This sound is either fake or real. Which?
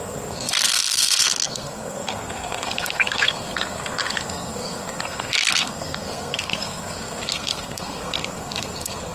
fake